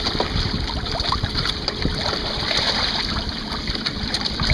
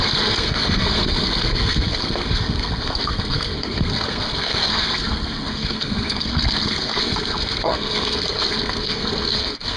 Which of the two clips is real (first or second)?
first